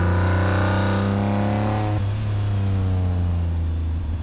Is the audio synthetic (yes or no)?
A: no